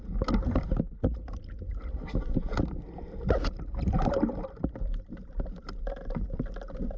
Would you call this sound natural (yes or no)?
yes